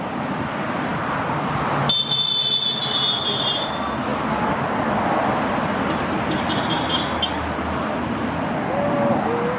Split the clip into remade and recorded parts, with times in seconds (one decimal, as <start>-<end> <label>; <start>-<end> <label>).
0.0-9.6 recorded